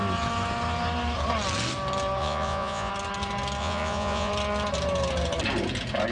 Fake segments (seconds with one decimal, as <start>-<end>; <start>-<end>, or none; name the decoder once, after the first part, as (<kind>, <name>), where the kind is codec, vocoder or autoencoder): 2.2-2.9 (vocoder, Vocos); 3.6-4.3

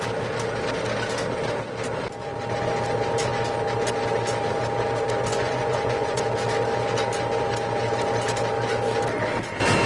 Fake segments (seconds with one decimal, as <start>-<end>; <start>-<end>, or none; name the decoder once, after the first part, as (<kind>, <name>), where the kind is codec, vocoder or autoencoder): 5.3-6.2 (vocoder, Vocos)